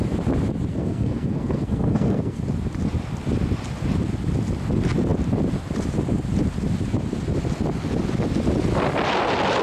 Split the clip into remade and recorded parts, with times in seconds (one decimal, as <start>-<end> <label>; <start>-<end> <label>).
0.0-0.7 recorded; 0.7-2.4 remade; 2.4-9.6 recorded